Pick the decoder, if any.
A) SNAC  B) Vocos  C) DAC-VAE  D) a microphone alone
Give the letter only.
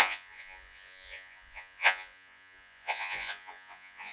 B